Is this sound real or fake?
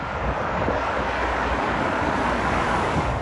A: fake